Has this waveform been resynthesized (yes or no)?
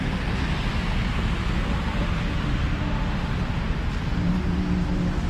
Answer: no